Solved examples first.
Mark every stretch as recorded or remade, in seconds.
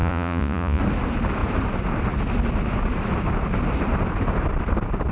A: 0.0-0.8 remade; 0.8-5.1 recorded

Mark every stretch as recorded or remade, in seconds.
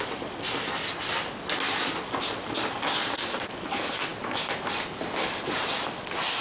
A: 0.0-6.4 recorded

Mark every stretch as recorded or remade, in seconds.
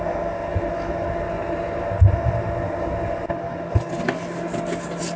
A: 0.0-5.2 recorded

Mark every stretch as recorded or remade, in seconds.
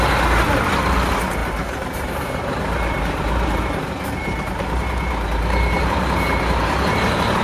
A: 0.0-7.4 remade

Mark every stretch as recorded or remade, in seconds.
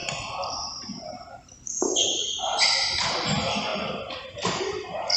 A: 0.0-5.2 recorded